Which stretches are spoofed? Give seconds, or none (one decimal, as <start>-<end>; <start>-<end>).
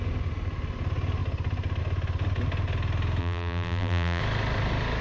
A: 3.2-4.2